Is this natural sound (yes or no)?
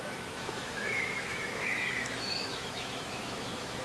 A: no